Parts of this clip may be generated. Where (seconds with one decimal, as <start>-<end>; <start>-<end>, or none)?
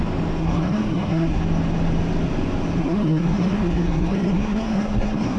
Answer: 0.4-1.4; 2.8-5.4